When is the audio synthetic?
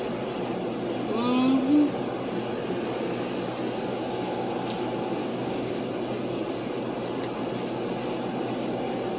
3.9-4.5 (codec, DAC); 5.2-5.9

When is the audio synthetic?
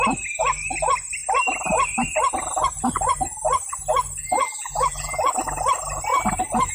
4.2-5.3 (vocoder, BigVGAN v2)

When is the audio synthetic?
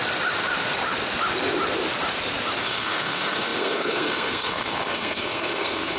2.6-6.0 (codec, SNAC)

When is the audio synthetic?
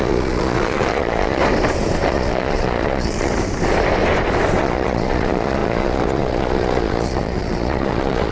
0.0-1.4 (vocoder, Vocos); 2.1-3.3; 4.6-8.3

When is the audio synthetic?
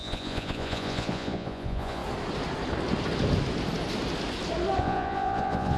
0.0-2.0 (vocoder, Vocos); 4.8-5.8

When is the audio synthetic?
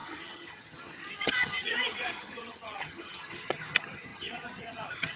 0.0-5.2 (vocoder, HiFi-GAN)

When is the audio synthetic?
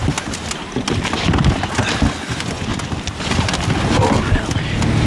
2.3-2.7 (vocoder, Vocos)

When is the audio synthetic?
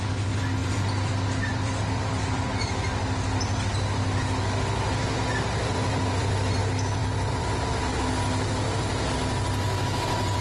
0.6-1.1 (vocoder, BigVGAN v2); 1.5-2.7; 5.6-6.6; 7.0-8.0